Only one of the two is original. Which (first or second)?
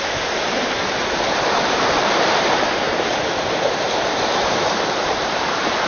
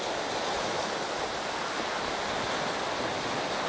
second